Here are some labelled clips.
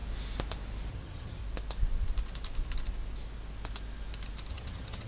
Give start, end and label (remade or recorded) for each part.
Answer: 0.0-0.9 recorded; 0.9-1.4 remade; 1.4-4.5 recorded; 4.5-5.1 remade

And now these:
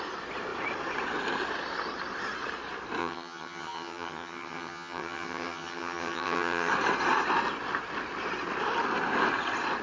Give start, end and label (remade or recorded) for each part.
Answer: 0.0-3.0 recorded; 3.0-6.7 remade; 6.7-9.8 recorded

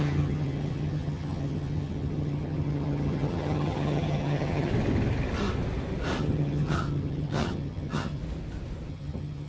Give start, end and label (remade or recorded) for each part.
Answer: 0.0-4.7 remade; 4.7-6.2 recorded; 6.2-8.2 remade; 8.2-8.9 recorded; 8.9-9.5 remade